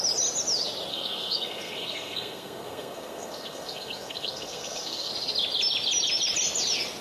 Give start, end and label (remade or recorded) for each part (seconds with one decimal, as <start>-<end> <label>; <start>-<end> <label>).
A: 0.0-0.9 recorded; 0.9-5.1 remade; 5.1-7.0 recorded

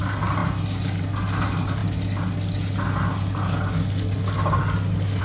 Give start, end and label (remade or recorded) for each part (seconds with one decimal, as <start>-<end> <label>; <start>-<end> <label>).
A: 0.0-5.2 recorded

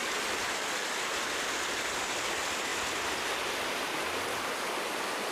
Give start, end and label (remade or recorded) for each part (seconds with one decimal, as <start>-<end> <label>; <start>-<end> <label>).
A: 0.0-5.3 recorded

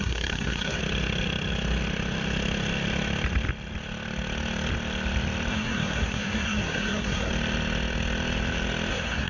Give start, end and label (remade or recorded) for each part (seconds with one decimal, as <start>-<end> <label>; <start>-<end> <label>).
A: 0.0-0.8 remade; 0.8-5.5 recorded; 5.5-7.3 remade; 7.3-8.9 recorded; 8.9-9.3 remade

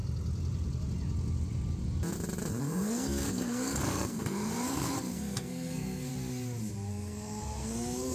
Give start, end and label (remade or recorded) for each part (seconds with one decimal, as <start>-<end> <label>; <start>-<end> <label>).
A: 0.0-2.6 recorded; 2.6-6.1 remade; 6.1-6.9 recorded; 6.9-8.1 remade

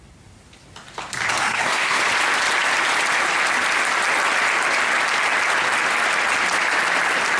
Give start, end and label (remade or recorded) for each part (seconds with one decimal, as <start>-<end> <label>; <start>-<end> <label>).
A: 0.0-1.4 recorded; 1.4-2.0 remade; 2.0-7.4 recorded